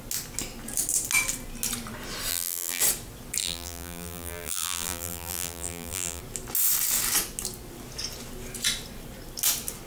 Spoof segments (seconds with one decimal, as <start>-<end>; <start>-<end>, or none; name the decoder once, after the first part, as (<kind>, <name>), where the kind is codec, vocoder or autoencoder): 2.3-2.8 (vocoder, BigVGAN v2); 3.4-6.2